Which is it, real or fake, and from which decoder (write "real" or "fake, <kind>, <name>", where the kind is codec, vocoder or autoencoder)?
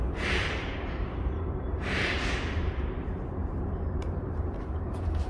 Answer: fake, vocoder, BigVGAN v2